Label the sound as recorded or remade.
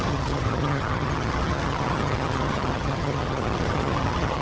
remade